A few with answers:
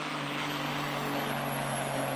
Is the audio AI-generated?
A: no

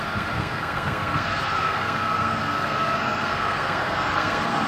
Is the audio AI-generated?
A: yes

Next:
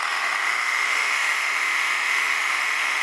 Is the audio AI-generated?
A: yes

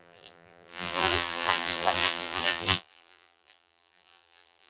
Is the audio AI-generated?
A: yes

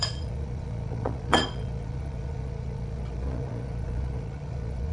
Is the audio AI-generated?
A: yes